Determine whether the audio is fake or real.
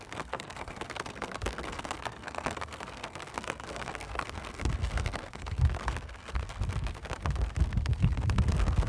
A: fake